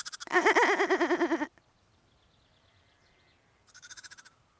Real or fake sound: real